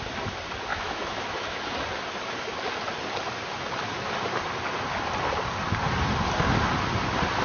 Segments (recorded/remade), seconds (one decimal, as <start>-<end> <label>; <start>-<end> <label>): 0.0-0.7 recorded; 0.7-1.6 remade; 1.6-7.4 recorded